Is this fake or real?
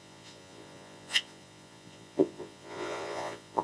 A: fake